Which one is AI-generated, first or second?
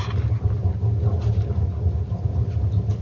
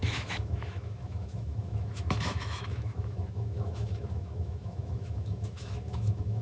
second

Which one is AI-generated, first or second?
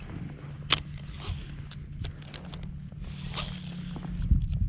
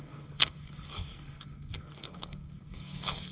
second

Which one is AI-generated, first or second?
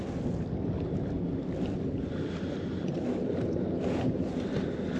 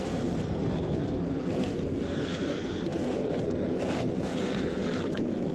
second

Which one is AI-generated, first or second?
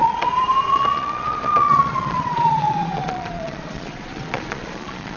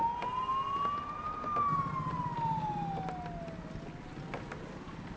first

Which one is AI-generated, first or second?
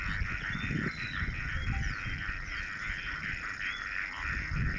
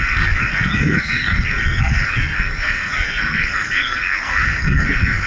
second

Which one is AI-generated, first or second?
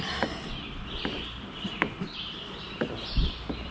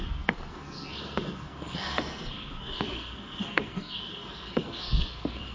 second